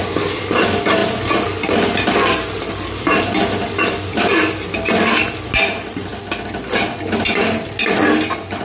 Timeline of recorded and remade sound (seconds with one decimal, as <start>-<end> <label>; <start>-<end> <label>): 0.0-8.6 recorded

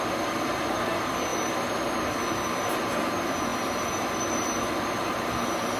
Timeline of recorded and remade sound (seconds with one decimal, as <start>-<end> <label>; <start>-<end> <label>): 0.0-3.5 remade; 3.5-5.1 recorded; 5.1-5.8 remade

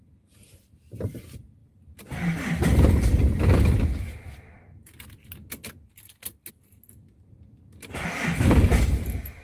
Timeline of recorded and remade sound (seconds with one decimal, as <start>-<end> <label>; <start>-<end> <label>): 0.0-9.4 recorded

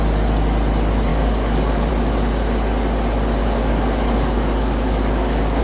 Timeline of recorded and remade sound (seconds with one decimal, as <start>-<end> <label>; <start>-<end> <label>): 0.0-1.1 recorded; 1.1-1.9 remade; 1.9-3.4 recorded; 3.4-5.6 remade